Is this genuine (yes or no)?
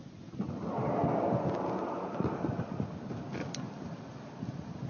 yes